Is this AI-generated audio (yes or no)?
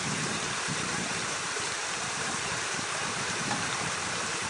yes